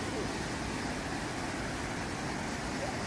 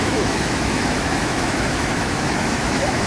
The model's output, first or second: second